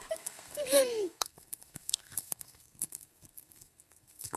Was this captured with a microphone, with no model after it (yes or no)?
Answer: no